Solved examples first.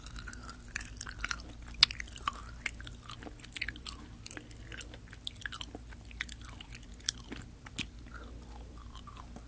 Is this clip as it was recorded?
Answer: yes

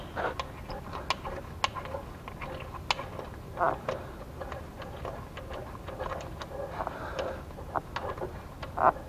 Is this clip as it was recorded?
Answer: yes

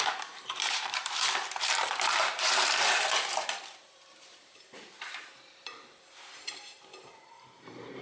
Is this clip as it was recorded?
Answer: no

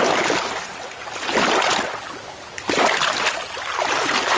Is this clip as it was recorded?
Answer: yes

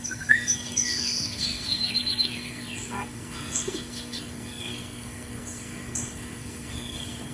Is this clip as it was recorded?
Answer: no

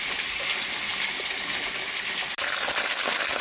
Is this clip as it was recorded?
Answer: yes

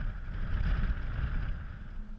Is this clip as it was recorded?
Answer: yes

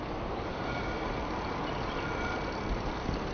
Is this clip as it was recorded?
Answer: yes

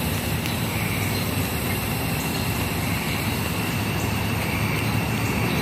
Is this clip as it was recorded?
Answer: no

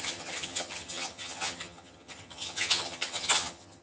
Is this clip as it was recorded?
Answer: no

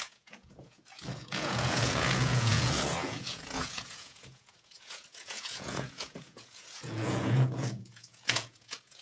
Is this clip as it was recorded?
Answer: no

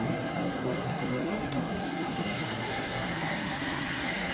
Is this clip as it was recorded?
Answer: no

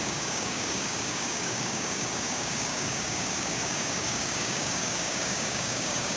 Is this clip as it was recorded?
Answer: no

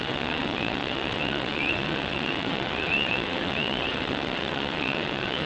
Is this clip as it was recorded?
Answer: no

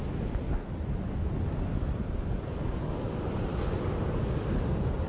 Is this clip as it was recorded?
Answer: yes